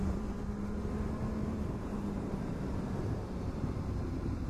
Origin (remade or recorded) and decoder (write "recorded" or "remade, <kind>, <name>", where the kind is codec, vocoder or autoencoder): remade, vocoder, BigVGAN v2